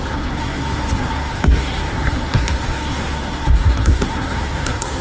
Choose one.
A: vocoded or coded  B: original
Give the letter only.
A